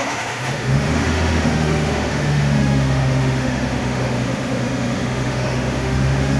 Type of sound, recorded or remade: remade